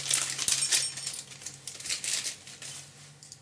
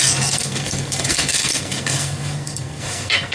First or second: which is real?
first